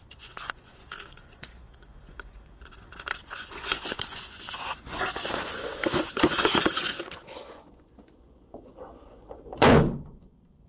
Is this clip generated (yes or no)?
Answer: yes